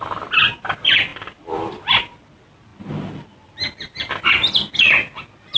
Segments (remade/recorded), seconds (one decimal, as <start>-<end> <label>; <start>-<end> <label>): 0.0-1.1 recorded; 1.1-2.1 remade; 2.1-5.6 recorded